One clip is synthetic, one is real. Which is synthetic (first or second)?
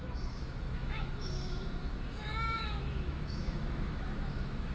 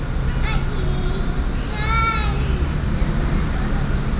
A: first